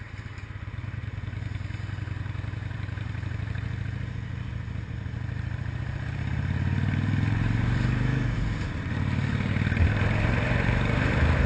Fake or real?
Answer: fake